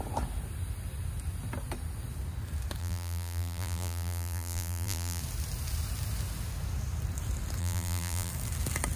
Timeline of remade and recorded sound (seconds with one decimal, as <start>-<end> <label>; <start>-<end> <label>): 0.0-2.8 recorded; 2.8-5.2 remade; 5.2-7.6 recorded; 7.6-8.3 remade; 8.3-9.0 recorded